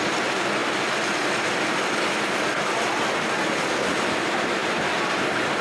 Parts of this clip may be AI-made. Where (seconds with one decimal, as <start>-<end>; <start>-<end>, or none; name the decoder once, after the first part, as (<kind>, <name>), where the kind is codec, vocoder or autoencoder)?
none